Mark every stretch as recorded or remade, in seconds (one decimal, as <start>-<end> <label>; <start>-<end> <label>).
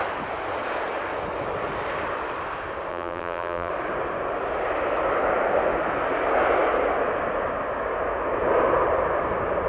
0.0-2.9 recorded; 2.9-3.7 remade; 3.7-9.7 recorded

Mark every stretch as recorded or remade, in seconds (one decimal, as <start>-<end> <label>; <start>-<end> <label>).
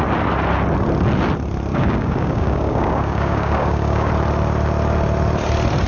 0.0-1.7 recorded; 1.7-4.1 remade; 4.1-5.9 recorded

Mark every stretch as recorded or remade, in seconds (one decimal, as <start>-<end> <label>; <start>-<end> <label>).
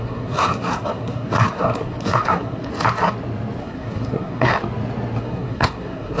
0.0-2.7 remade; 2.7-3.6 recorded; 3.6-4.5 remade; 4.5-5.2 recorded; 5.2-6.2 remade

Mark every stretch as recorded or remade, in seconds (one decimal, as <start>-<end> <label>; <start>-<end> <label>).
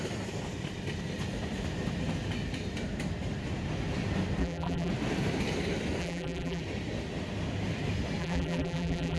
0.0-4.4 recorded; 4.4-4.9 remade; 4.9-6.0 recorded; 6.0-6.6 remade; 6.6-8.2 recorded; 8.2-9.2 remade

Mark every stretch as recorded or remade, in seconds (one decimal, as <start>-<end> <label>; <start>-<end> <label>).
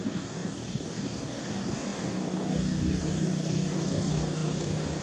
0.0-5.0 remade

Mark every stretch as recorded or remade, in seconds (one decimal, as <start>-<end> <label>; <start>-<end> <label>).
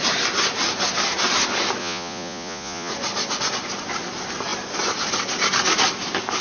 0.0-1.8 recorded; 1.8-2.9 remade; 2.9-6.4 recorded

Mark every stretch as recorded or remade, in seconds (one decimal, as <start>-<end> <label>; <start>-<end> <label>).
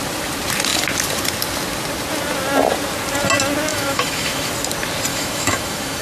0.0-3.7 recorded; 3.7-4.5 remade; 4.5-5.1 recorded; 5.1-6.0 remade